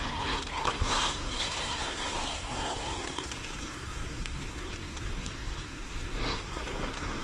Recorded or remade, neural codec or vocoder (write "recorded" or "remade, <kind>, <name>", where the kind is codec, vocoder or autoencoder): remade, codec, SNAC